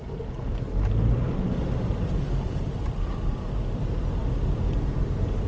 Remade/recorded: recorded